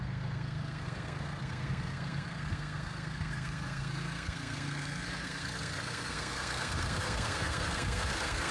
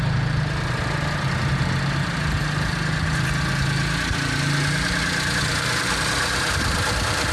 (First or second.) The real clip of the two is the second